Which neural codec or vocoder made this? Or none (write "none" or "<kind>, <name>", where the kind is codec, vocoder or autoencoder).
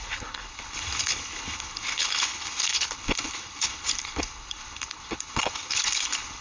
codec, HILCodec